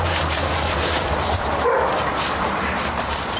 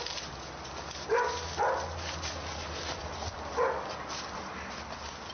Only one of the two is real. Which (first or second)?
second